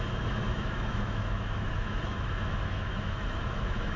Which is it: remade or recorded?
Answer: remade